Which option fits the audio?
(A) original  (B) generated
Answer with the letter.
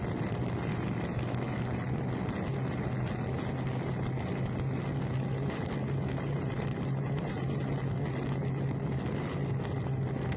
A